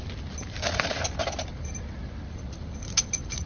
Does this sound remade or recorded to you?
recorded